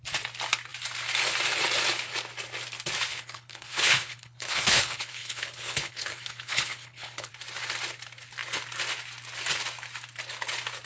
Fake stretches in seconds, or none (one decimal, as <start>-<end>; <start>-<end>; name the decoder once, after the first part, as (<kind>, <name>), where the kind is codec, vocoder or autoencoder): 3.1-7.3 (codec, HILCodec)